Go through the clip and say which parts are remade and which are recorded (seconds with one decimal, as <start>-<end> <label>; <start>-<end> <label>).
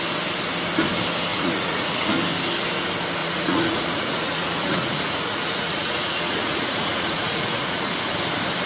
0.0-1.3 recorded; 1.3-2.1 remade; 2.1-3.2 recorded; 3.2-7.9 remade; 7.9-8.7 recorded